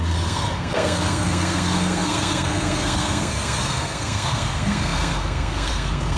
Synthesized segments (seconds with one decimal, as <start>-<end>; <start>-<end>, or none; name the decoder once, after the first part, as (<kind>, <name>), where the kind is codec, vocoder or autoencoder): 0.0-6.2 (codec, SNAC)